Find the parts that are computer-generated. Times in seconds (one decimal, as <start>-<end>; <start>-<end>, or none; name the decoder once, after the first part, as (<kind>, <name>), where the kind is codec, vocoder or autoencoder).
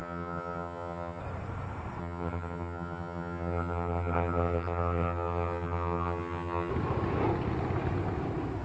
0.0-1.2 (vocoder, HiFi-GAN); 2.0-6.7